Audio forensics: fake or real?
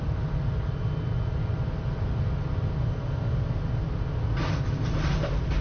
real